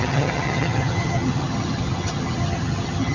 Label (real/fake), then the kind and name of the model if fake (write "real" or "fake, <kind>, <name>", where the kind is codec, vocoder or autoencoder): fake, vocoder, HiFi-GAN